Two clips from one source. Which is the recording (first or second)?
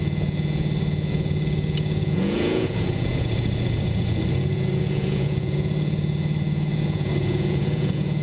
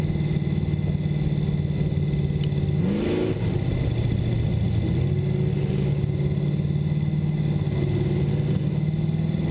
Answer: second